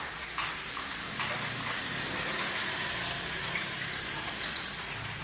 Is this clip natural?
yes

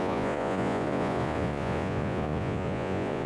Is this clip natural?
no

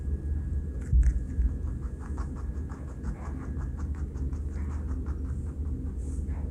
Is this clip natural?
yes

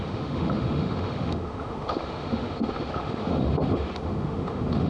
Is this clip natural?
no